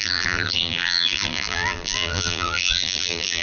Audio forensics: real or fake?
fake